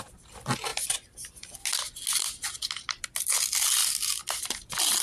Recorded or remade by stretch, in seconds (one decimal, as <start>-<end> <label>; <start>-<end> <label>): 0.0-5.0 recorded